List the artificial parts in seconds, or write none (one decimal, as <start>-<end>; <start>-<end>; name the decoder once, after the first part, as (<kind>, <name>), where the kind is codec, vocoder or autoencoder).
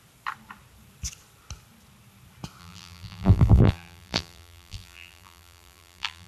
2.6-6.3 (vocoder, BigVGAN v2)